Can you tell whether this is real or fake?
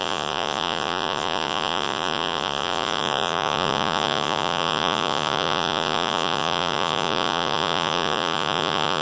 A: fake